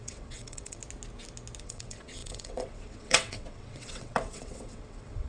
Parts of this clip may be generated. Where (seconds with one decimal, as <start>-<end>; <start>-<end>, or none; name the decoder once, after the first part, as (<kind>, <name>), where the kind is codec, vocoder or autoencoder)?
0.0-0.8 (vocoder, WaveNeXt); 1.6-5.3